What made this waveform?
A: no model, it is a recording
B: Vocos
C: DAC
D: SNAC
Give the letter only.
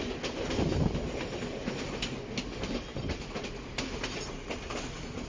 A